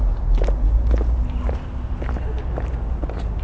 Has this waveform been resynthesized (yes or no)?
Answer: no